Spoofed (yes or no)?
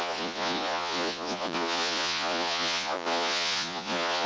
yes